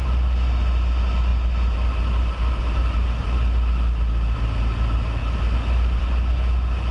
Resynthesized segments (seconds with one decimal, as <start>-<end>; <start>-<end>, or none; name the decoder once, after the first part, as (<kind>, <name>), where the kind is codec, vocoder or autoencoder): none